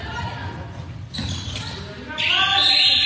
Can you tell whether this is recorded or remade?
recorded